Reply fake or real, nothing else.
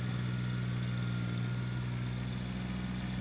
real